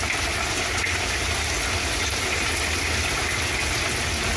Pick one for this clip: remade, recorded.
recorded